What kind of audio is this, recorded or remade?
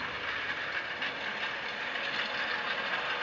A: recorded